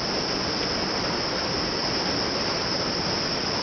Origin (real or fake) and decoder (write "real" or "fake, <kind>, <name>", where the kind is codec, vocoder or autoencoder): real